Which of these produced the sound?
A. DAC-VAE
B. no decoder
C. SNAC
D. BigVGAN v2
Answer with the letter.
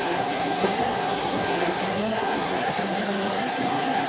C